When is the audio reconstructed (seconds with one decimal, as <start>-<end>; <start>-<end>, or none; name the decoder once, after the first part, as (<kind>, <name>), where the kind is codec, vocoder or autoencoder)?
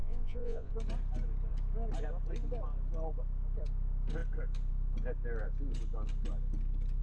0.0-0.7 (vocoder, Vocos)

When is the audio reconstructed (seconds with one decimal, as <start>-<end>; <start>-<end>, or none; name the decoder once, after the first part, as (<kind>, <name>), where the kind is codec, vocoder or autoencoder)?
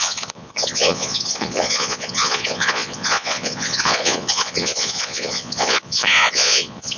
0.0-7.0 (vocoder, Vocos)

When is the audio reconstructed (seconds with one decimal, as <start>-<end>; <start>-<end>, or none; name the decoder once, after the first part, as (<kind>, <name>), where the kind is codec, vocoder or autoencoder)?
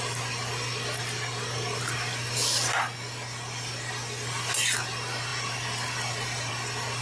none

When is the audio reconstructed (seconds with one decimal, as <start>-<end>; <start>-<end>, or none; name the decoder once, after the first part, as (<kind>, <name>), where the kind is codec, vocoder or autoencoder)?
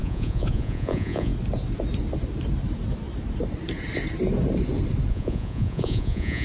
0.0-1.3 (vocoder, Vocos); 5.1-6.4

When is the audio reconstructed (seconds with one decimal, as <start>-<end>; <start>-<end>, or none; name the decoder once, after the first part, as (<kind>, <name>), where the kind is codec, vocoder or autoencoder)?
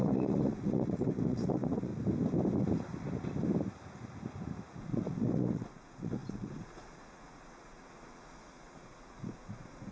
0.0-1.9 (vocoder, Vocos); 4.8-9.9